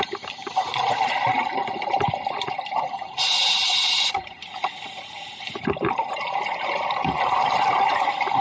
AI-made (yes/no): no